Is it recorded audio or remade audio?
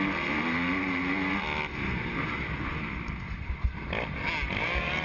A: recorded